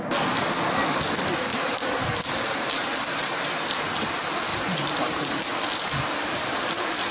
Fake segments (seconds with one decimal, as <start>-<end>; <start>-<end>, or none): 1.5-4.1; 4.5-5.5